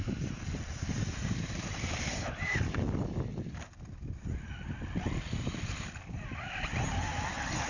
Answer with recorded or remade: recorded